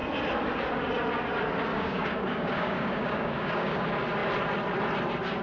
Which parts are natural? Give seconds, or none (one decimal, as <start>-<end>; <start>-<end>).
0.0-1.7; 3.8-5.4